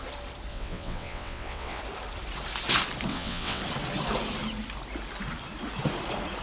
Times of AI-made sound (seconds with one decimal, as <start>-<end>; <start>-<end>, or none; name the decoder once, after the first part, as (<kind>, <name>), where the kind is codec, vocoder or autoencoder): 0.5-1.8 (vocoder, WaveNeXt); 3.1-3.6